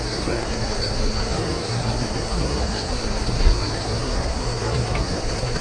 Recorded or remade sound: remade